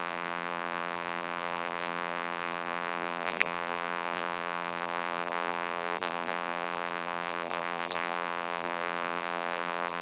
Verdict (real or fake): fake